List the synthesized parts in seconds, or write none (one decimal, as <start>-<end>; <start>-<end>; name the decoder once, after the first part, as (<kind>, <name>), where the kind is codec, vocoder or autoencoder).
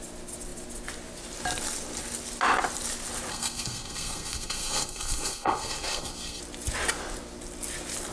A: 3.3-6.4 (codec, SNAC)